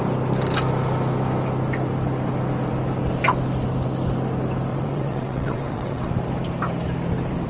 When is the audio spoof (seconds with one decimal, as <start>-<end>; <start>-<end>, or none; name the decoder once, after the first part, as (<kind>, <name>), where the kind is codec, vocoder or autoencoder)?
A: 4.7-6.1 (vocoder, WaveNeXt)